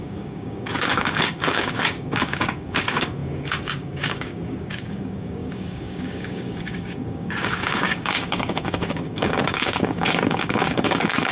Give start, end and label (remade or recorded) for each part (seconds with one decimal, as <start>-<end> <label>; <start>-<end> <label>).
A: 0.0-11.3 remade